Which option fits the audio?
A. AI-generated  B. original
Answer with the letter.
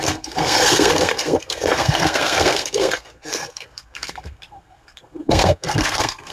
A